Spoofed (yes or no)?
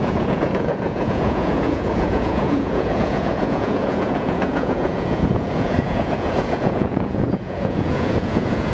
yes